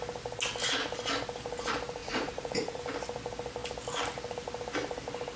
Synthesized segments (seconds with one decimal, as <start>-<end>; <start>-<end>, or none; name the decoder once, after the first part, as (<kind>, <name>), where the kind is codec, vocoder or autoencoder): 2.0-2.8 (vocoder, Vocos)